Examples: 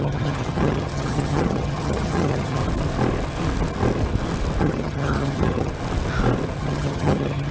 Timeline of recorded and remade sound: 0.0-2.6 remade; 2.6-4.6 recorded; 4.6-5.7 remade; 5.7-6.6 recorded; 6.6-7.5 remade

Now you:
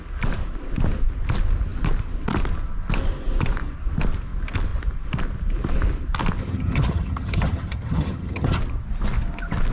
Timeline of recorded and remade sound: 0.0-6.4 recorded; 6.4-8.6 remade; 8.6-9.7 recorded